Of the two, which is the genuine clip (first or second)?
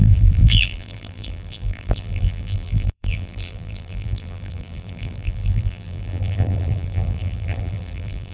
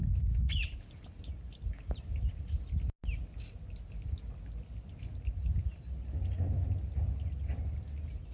second